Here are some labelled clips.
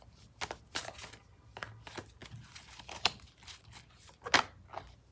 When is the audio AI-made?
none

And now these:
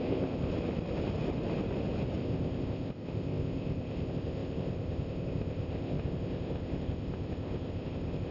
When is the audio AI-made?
0.0-0.5 (codec, ZipCodec); 2.2-8.3

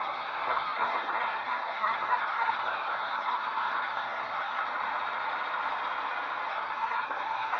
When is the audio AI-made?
0.0-4.6 (codec, SNAC); 6.5-7.6

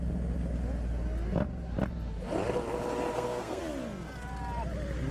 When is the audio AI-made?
3.1-3.6 (codec, SNAC)

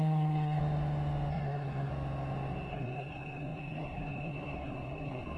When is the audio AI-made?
0.0-0.6 (codec, SNAC); 1.3-1.9; 2.7-5.4

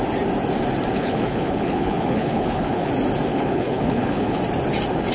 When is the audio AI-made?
0.9-2.9 (codec, HILCodec); 3.3-4.4

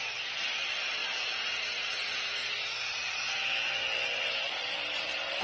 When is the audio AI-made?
0.0-1.0 (vocoder, BigVGAN v2); 4.2-5.4

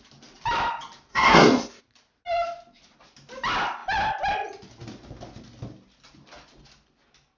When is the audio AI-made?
1.1-1.8 (codec, SNAC)